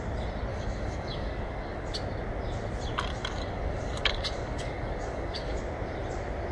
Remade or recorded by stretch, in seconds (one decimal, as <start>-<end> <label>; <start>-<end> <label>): 0.0-0.5 recorded; 0.5-1.9 remade; 1.9-3.1 recorded; 3.1-5.6 remade; 5.6-6.5 recorded